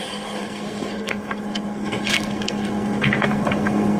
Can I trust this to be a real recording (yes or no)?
no